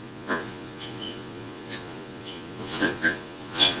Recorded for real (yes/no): no